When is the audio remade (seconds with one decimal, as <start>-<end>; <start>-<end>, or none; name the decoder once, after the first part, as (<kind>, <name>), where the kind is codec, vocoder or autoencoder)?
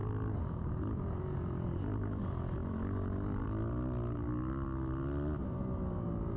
none